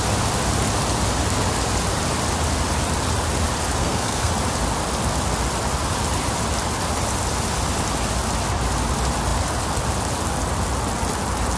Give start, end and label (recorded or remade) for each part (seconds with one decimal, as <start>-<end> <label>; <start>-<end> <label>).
0.0-3.8 recorded; 3.8-4.3 remade; 4.3-11.6 recorded

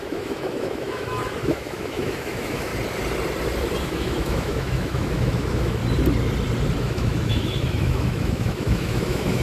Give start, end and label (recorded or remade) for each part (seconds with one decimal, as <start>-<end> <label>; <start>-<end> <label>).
0.0-2.7 remade; 2.7-3.8 recorded; 3.8-5.8 remade; 5.8-6.8 recorded; 6.8-9.4 remade